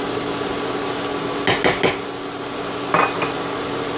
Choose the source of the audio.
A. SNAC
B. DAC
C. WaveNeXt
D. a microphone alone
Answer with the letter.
D